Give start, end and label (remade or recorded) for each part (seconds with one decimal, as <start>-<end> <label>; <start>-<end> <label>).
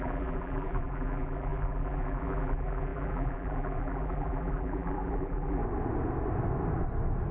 0.0-5.6 remade; 5.6-7.3 recorded